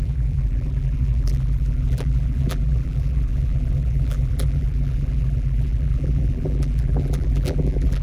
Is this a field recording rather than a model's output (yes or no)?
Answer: no